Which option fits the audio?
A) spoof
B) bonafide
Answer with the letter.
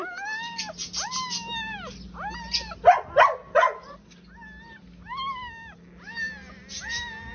B